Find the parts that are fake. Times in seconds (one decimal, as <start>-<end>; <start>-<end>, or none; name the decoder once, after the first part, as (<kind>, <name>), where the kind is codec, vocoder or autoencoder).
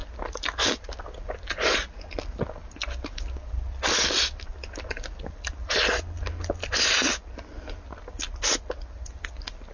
none